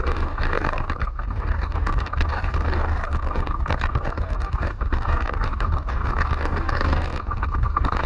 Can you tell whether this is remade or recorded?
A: remade